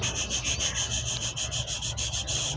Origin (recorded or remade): recorded